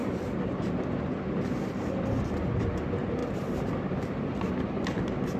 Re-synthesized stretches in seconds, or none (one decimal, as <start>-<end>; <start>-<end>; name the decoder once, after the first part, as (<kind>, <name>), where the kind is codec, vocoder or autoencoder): 0.0-2.6 (vocoder, BigVGAN v2); 3.2-3.9

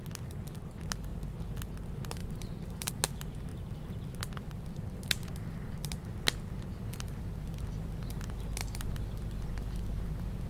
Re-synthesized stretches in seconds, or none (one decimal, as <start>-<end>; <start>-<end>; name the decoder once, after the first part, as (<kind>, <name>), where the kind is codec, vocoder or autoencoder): 2.2-2.9 (vocoder, BigVGAN v2); 3.5-4.0

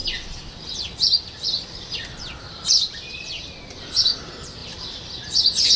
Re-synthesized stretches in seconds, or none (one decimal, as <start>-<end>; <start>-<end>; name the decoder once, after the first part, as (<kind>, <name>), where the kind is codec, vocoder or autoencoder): 0.0-3.1 (vocoder, BigVGAN v2); 4.6-5.8

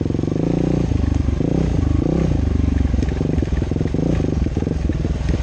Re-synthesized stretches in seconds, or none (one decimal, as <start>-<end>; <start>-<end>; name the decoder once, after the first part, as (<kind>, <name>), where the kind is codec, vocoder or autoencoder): 1.5-3.4 (vocoder, BigVGAN v2)

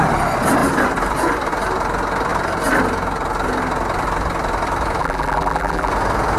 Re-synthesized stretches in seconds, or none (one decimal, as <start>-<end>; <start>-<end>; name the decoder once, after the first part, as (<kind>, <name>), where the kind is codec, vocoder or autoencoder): 5.0-5.9 (vocoder, BigVGAN v2)

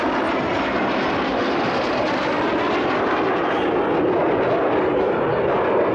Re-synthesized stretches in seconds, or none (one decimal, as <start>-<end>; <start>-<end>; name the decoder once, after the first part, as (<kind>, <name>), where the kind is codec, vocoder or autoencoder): 1.3-2.6 (vocoder, BigVGAN v2)

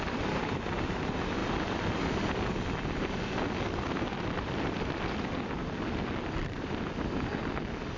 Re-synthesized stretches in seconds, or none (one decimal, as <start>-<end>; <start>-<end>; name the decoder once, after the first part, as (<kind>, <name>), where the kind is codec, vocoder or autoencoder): 1.4-5.5 (vocoder, BigVGAN v2); 6.4-6.9

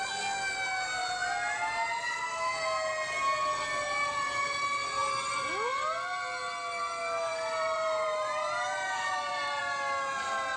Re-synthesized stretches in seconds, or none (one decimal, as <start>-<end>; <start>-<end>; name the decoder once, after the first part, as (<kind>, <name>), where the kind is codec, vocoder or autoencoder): 7.3-9.6 (vocoder, BigVGAN v2)